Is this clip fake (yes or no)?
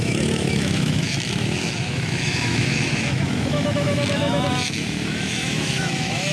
yes